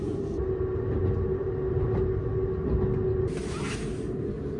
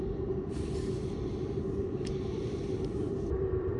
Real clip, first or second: first